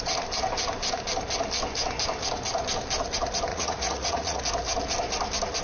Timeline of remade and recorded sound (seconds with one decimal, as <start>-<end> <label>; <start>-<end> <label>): 0.0-3.5 recorded; 3.5-4.4 remade; 4.4-5.6 recorded